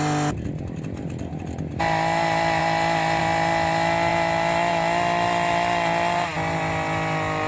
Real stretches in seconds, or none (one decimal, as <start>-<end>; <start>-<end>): 0.0-7.5